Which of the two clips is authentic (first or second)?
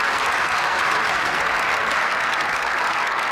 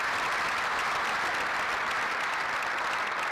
second